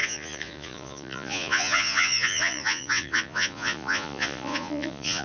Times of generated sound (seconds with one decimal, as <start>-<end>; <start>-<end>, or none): 0.0-5.2